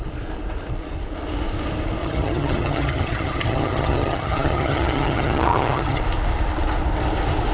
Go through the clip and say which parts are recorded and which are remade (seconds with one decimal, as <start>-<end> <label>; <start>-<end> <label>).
0.0-2.0 recorded; 2.0-6.0 remade; 6.0-7.5 recorded